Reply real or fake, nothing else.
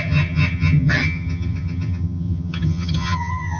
fake